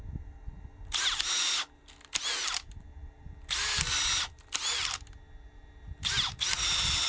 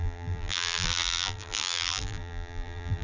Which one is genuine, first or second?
first